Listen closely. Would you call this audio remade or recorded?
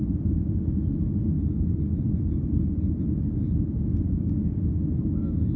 recorded